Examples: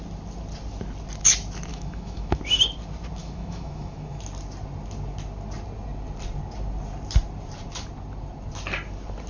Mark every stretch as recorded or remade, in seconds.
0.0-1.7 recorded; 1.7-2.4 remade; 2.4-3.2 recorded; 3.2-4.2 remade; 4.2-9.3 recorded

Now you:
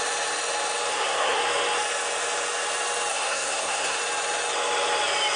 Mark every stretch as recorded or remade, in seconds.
0.0-0.9 recorded; 0.9-1.4 remade; 1.4-3.1 recorded; 3.1-4.0 remade; 4.0-5.4 recorded

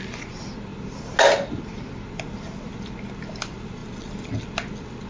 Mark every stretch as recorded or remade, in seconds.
0.0-5.1 recorded

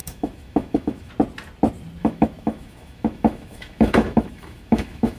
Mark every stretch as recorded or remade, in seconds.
0.0-1.1 remade; 1.1-2.0 recorded; 2.0-5.2 remade

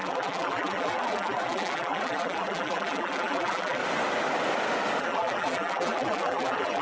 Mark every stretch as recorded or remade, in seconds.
0.0-3.8 remade; 3.8-5.0 recorded; 5.0-6.8 remade

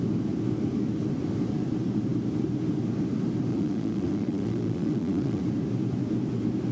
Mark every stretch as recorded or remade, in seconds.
0.0-3.5 recorded; 3.5-5.4 remade; 5.4-6.7 recorded

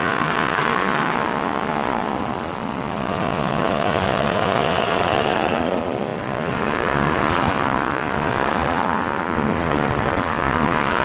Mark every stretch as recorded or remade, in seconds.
0.0-11.0 remade

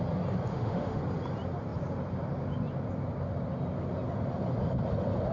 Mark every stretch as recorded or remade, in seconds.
0.0-0.5 recorded; 0.5-1.0 remade; 1.0-5.3 recorded